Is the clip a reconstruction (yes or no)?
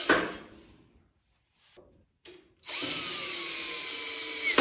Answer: no